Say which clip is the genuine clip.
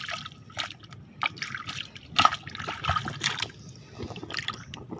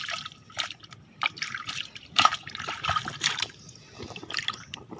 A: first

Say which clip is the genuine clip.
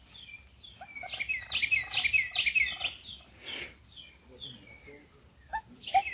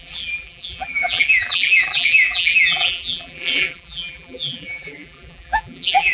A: first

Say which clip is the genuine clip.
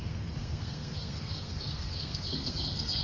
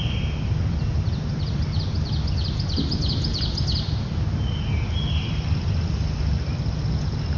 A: second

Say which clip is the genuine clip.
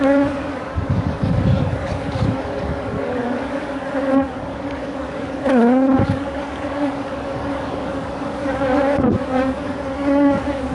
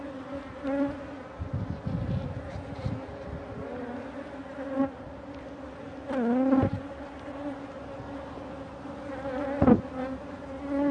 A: second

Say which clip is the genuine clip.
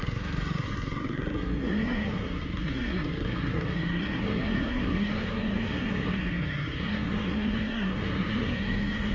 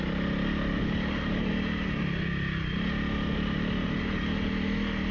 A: second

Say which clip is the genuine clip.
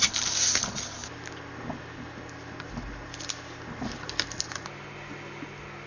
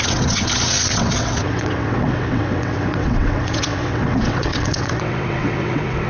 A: first